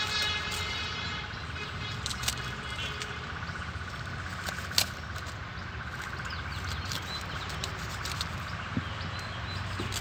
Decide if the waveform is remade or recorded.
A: recorded